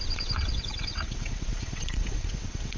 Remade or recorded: remade